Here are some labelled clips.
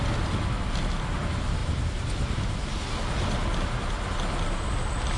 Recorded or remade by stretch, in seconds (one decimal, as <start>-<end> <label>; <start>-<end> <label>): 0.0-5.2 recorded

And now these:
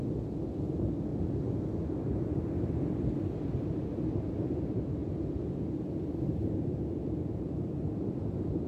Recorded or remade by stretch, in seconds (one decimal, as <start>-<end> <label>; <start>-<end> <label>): 0.0-8.7 recorded

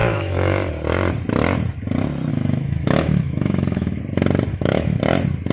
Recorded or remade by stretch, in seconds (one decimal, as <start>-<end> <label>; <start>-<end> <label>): 0.0-0.7 remade; 0.7-2.3 recorded; 2.3-4.0 remade; 4.0-4.5 recorded; 4.5-5.0 remade; 5.0-5.5 recorded